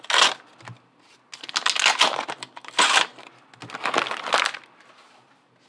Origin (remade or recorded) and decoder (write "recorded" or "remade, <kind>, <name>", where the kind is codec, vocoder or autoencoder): recorded